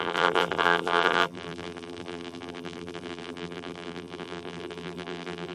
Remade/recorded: remade